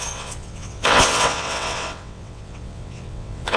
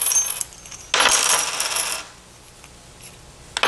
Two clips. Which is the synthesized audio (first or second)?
first